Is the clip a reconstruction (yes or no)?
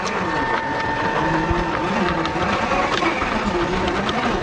no